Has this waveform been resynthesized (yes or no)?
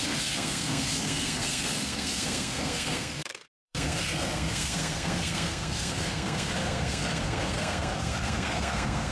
yes